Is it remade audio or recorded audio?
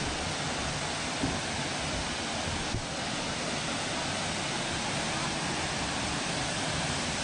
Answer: recorded